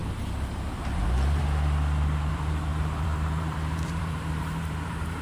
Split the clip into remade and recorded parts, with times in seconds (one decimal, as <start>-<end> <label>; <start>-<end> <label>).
0.0-0.8 recorded; 0.8-1.4 remade; 1.4-2.3 recorded; 2.3-5.2 remade